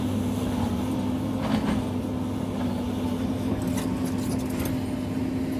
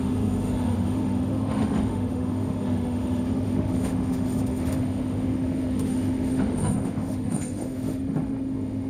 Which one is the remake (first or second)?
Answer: second